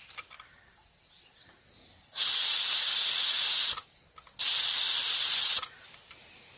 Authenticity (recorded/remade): recorded